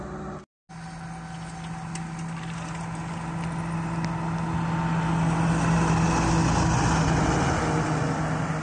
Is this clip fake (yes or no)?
no